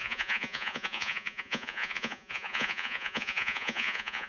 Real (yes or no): no